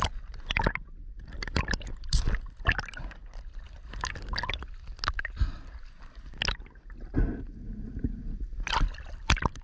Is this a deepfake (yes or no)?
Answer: no